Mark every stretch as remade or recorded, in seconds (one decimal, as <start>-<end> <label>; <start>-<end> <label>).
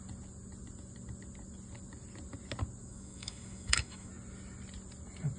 0.0-2.8 recorded; 2.8-4.1 remade; 4.1-5.4 recorded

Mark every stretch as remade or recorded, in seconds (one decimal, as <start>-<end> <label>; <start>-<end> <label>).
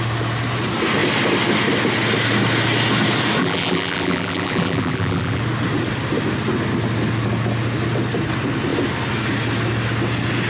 0.0-3.4 recorded; 3.4-5.4 remade; 5.4-10.5 recorded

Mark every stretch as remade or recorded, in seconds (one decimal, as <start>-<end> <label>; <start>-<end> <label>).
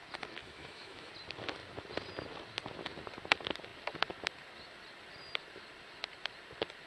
0.0-0.4 recorded; 0.4-1.1 remade; 1.1-6.9 recorded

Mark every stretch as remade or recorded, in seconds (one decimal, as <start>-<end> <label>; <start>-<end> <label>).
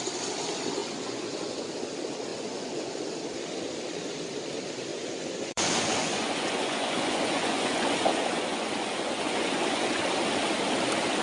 0.0-0.8 recorded; 0.8-1.7 remade; 1.7-2.3 recorded; 2.3-3.0 remade; 3.0-4.9 recorded; 4.9-10.0 remade; 10.0-11.2 recorded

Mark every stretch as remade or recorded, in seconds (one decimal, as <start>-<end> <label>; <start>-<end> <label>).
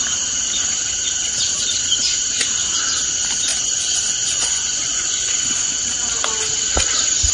0.0-3.5 recorded; 3.5-5.7 remade; 5.7-7.3 recorded